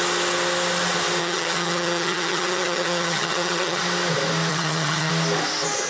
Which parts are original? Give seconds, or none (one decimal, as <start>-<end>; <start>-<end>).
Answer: 0.0-1.2; 3.8-4.5; 5.1-5.9